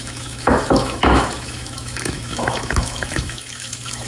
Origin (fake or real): fake